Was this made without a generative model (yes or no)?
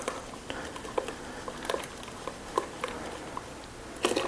yes